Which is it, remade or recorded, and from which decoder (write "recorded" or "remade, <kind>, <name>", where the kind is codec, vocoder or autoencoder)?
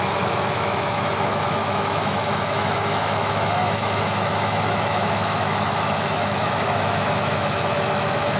remade, autoencoder, DAC-VAE